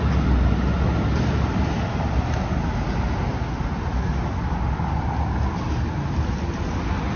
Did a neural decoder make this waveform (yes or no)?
no